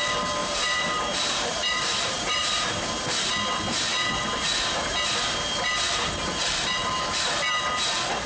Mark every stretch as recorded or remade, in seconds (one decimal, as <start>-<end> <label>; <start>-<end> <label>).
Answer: 0.0-0.4 recorded; 0.4-2.5 remade; 2.5-8.3 recorded